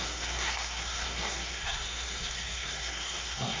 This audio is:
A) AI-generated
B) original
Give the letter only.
A